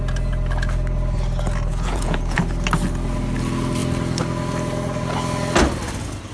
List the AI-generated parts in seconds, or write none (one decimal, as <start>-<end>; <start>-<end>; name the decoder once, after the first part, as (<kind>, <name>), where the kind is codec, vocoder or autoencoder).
1.7-2.4 (vocoder, Vocos)